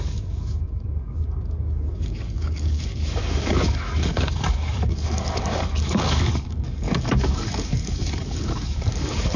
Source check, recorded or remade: remade